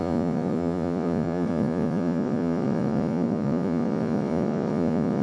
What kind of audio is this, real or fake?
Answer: fake